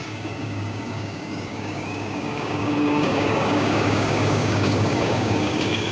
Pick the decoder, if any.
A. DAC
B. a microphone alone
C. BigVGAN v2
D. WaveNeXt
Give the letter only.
A